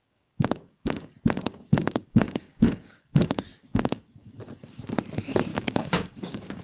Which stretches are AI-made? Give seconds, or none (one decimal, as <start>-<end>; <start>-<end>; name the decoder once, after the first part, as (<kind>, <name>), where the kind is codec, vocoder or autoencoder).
0.0-1.1 (codec, DAC); 1.5-4.8; 5.5-6.6